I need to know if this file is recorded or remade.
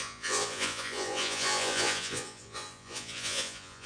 remade